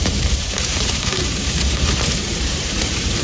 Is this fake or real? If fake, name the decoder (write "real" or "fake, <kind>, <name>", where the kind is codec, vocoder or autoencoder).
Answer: fake, vocoder, BigVGAN v2